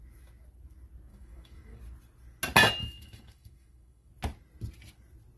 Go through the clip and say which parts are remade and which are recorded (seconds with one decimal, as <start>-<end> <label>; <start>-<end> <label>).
0.0-1.1 recorded; 1.1-1.8 remade; 1.8-2.8 recorded; 2.8-4.1 remade; 4.1-5.4 recorded